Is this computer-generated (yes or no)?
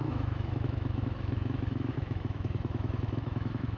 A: yes